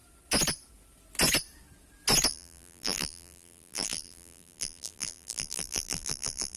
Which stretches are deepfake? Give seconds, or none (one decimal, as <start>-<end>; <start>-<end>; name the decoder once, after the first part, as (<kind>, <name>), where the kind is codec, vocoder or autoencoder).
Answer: 2.3-6.6 (vocoder, BigVGAN v2)